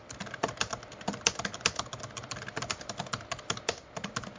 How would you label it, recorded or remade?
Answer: recorded